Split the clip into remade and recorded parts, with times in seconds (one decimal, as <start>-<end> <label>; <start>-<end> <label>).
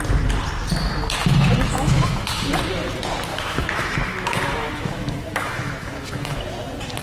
0.0-1.2 recorded; 1.2-2.6 remade; 2.6-3.3 recorded; 3.3-6.4 remade; 6.4-7.0 recorded